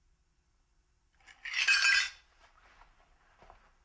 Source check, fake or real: real